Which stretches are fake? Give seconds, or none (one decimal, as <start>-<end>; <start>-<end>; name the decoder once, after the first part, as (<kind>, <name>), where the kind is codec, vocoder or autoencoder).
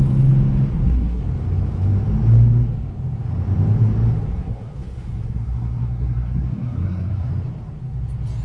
0.7-1.2 (codec, SNAC); 4.3-7.3